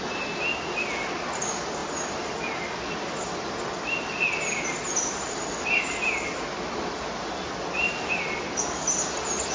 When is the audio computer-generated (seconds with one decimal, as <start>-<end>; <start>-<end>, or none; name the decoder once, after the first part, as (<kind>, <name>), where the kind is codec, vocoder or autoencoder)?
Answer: none